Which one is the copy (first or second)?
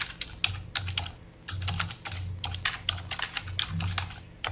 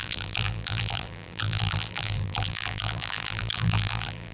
second